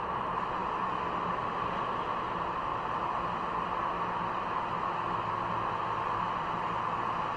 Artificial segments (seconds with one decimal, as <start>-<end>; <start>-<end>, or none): none